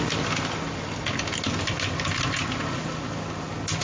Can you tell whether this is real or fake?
real